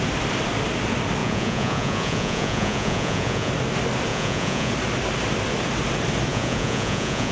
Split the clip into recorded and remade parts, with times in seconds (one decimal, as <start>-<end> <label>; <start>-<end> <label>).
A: 0.0-1.2 recorded; 1.2-3.5 remade; 3.5-4.1 recorded; 4.1-4.7 remade; 4.7-6.3 recorded; 6.3-7.3 remade